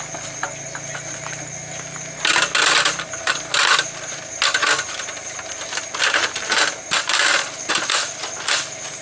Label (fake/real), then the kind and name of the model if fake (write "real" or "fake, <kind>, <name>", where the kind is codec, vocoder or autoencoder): real